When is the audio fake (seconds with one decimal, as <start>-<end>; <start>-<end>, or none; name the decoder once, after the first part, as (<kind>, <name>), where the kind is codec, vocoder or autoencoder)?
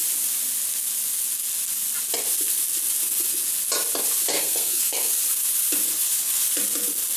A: 4.3-5.2 (codec, SNAC)